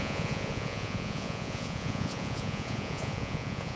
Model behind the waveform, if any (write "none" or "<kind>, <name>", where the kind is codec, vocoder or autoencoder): vocoder, Vocos